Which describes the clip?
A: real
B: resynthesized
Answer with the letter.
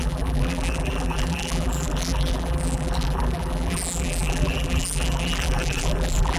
B